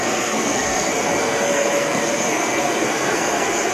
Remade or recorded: remade